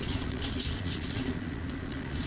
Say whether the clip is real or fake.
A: fake